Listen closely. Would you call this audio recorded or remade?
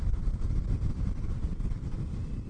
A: remade